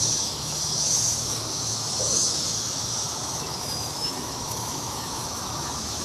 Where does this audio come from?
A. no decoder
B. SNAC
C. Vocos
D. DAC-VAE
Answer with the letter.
D